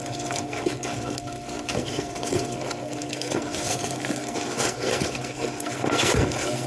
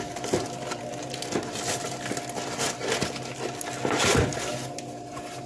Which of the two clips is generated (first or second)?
first